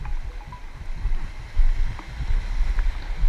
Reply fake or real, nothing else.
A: real